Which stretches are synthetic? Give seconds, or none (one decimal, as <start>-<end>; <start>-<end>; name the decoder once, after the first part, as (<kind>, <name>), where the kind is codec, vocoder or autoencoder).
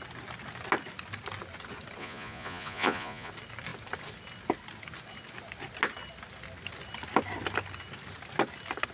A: 2.0-3.3 (vocoder, Vocos)